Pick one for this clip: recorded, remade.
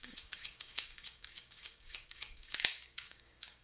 remade